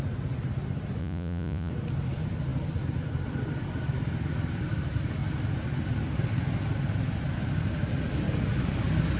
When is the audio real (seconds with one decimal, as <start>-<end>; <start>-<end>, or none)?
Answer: 0.0-1.0; 1.7-9.2